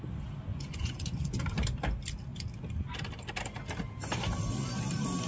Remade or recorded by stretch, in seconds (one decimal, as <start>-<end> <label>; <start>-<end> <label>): 0.0-0.5 recorded; 0.5-1.4 remade; 1.4-5.3 recorded